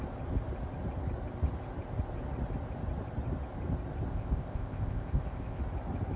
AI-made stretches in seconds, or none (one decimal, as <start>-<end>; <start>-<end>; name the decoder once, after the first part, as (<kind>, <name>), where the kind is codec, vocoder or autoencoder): 4.1-5.6 (codec, ZipCodec)